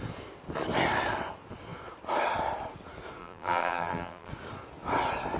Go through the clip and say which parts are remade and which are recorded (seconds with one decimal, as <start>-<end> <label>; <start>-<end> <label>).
0.0-3.2 recorded; 3.2-4.3 remade; 4.3-5.4 recorded

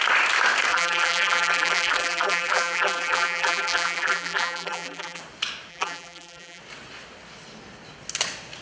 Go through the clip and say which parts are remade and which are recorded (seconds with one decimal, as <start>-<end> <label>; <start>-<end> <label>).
0.0-0.7 recorded; 0.7-5.2 remade; 5.2-5.7 recorded; 5.7-6.6 remade; 6.6-8.6 recorded

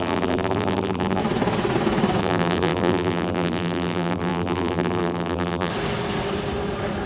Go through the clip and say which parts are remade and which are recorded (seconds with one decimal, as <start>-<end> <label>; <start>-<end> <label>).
0.0-1.2 remade; 1.2-2.2 recorded; 2.2-5.7 remade; 5.7-7.1 recorded

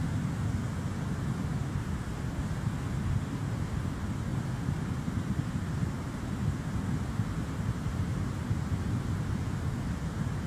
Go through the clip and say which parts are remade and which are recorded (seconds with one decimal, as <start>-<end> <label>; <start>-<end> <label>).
0.0-10.5 recorded

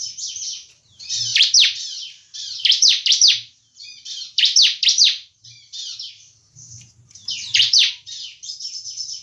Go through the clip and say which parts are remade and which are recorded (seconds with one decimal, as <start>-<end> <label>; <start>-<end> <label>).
0.0-9.2 remade

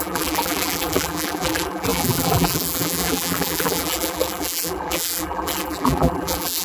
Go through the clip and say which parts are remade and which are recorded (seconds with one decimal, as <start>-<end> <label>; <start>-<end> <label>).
0.0-6.6 remade

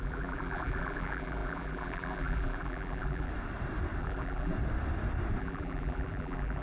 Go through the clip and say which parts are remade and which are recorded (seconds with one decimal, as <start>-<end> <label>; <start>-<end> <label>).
0.0-3.3 remade; 3.3-4.0 recorded; 4.0-4.5 remade; 4.5-5.4 recorded; 5.4-6.6 remade